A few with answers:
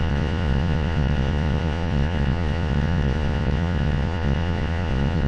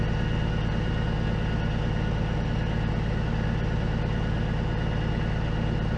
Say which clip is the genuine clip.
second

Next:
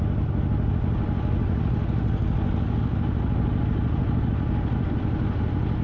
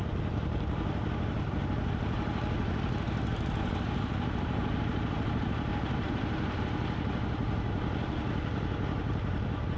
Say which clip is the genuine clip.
first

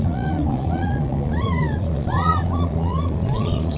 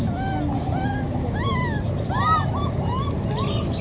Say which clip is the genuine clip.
second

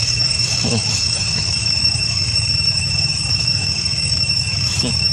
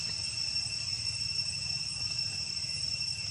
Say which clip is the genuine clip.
second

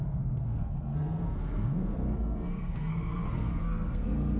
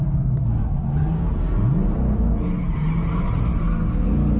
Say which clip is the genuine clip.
second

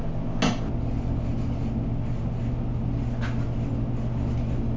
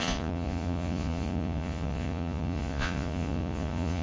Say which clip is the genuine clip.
first